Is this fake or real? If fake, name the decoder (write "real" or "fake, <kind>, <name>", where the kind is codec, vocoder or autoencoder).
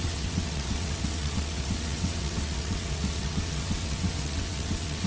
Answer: fake, vocoder, WaveNeXt